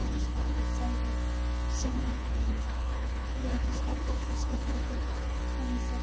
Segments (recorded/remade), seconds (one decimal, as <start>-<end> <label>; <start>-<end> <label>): 0.0-0.6 remade; 0.6-1.8 recorded; 1.8-5.4 remade; 5.4-6.0 recorded